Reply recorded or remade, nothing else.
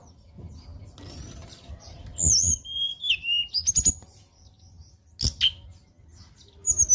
recorded